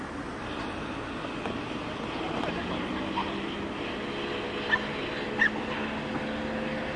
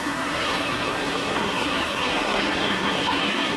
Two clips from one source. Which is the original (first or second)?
first